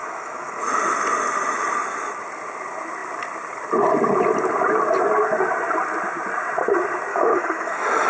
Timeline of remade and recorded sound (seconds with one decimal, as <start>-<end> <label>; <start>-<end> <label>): 0.0-0.8 remade; 0.8-7.1 recorded; 7.1-8.1 remade